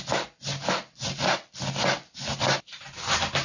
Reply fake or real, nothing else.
real